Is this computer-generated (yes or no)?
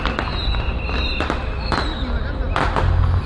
no